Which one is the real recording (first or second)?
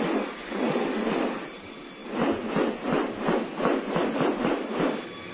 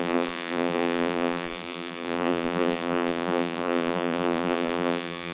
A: first